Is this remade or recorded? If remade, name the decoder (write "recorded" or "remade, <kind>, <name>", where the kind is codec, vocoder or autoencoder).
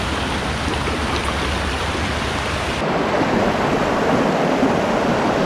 recorded